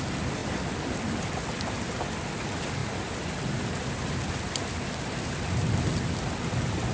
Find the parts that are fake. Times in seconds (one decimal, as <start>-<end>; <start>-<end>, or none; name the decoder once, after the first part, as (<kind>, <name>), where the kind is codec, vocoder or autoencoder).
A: 2.8-4.3 (vocoder, BigVGAN v2)